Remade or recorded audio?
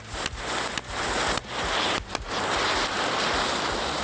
recorded